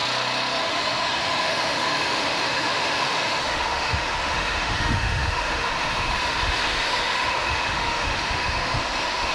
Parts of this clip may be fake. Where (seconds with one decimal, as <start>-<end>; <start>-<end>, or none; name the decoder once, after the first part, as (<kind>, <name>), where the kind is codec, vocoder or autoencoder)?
0.6-9.3 (autoencoder, DAC-VAE)